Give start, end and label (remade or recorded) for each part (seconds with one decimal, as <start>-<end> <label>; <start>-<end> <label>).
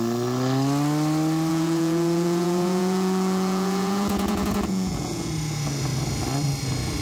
0.0-1.5 recorded; 1.5-5.3 remade; 5.3-7.0 recorded